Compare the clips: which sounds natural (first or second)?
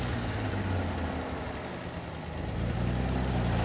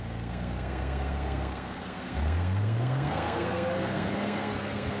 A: first